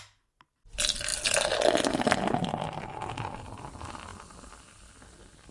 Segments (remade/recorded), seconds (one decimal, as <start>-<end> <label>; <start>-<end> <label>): 0.0-5.5 recorded